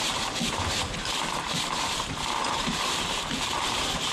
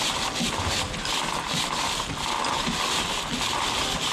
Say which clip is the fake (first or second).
first